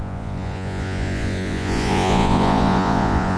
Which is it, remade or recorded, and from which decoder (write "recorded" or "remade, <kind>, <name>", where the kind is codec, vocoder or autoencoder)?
remade, vocoder, Vocos